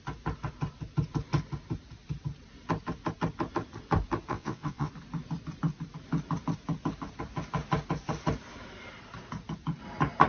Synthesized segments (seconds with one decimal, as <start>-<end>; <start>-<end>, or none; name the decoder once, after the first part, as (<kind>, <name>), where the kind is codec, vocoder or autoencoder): 4.3-4.9 (vocoder, WaveNeXt)